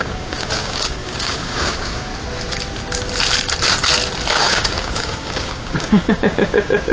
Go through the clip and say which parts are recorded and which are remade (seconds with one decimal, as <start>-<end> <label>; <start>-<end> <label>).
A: 0.0-2.1 remade; 2.1-4.3 recorded; 4.3-6.9 remade